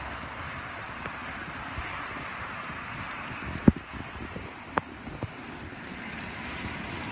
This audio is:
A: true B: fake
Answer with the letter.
A